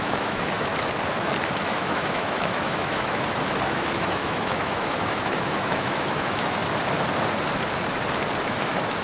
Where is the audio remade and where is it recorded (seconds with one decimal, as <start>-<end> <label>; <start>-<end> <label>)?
0.0-0.7 remade; 0.7-1.5 recorded; 1.5-6.6 remade; 6.6-8.4 recorded; 8.4-9.0 remade